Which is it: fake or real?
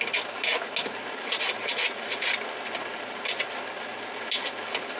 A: real